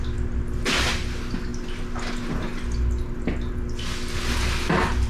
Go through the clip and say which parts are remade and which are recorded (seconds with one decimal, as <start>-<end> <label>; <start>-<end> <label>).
0.0-5.1 recorded